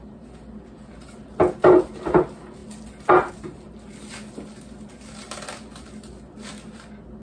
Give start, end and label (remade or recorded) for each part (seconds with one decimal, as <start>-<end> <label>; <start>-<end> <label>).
0.0-7.2 recorded